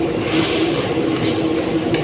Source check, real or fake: real